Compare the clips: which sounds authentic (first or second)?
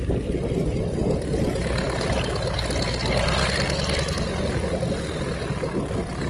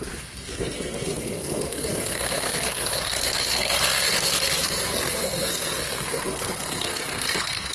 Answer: first